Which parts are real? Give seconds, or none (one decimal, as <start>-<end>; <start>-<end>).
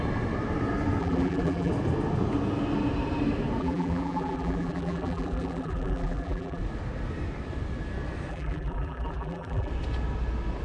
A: 0.0-1.0; 1.7-3.6; 6.6-8.3; 9.7-10.6